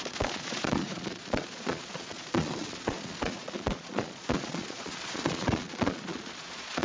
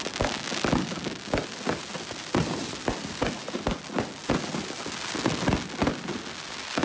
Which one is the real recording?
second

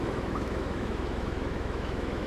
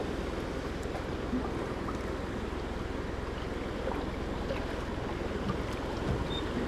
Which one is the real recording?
second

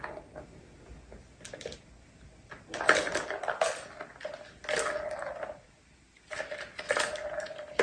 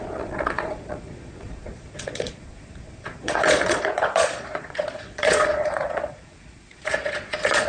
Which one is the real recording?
first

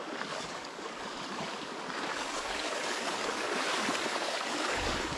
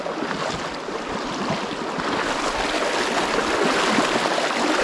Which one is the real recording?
second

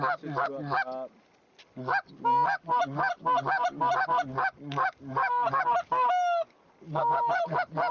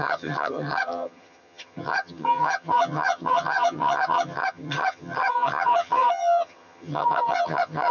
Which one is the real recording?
first